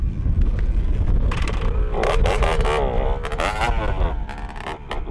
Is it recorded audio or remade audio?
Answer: recorded